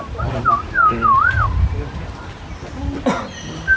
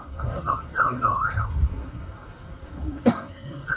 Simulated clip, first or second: second